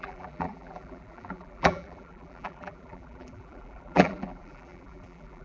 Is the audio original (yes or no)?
no